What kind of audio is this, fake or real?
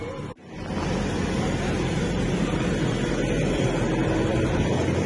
real